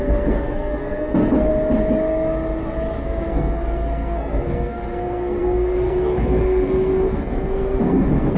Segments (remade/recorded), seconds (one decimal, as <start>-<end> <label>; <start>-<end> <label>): 0.0-1.5 remade; 1.5-3.0 recorded; 3.0-8.4 remade